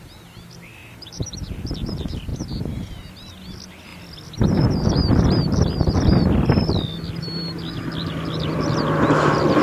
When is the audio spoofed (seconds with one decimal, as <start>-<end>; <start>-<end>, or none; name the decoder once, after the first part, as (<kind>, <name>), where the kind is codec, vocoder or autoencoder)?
0.8-1.7 (vocoder, BigVGAN v2); 2.3-3.1